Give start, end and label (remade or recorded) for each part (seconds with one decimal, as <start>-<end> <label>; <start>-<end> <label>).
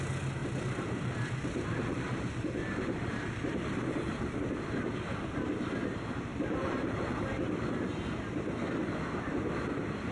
0.0-0.4 recorded; 0.4-4.4 remade; 4.4-6.3 recorded; 6.3-7.7 remade; 7.7-10.1 recorded